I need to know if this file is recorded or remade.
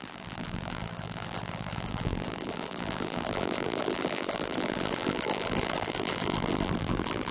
remade